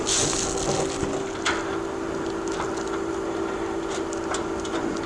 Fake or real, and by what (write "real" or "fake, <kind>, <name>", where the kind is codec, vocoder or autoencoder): real